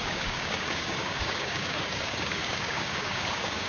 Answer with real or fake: fake